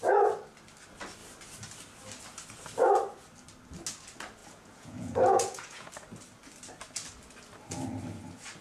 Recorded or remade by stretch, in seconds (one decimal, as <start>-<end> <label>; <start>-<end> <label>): 0.0-4.4 recorded; 4.4-5.9 remade; 5.9-8.6 recorded